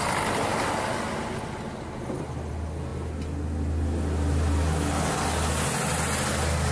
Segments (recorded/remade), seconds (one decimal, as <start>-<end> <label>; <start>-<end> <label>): 0.0-6.7 recorded